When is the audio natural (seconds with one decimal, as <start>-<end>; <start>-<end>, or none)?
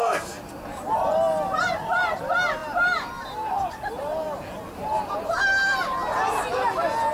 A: 0.0-7.1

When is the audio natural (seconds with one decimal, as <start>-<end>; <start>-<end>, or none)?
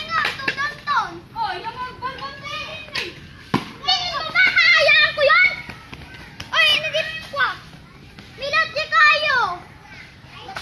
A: 0.0-10.6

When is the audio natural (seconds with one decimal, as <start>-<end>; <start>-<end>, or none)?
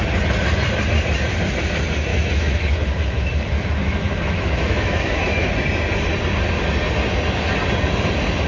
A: 0.0-2.1; 5.5-8.5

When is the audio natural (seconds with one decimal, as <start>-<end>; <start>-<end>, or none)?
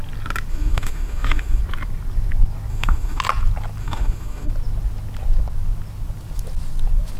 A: 0.0-0.5; 1.6-2.7; 3.2-3.8; 4.5-7.2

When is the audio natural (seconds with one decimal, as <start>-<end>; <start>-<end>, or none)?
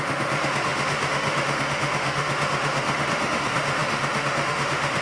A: none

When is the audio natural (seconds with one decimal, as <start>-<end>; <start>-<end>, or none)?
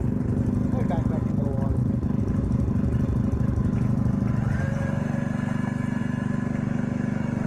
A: 0.0-7.5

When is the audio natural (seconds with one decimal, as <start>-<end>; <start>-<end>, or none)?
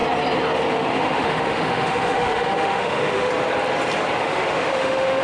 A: 0.0-0.7; 3.3-4.2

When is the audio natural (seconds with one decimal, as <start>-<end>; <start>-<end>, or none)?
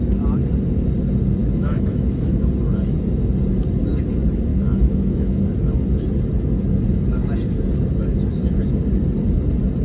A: 0.0-1.4; 2.5-4.5; 5.4-9.8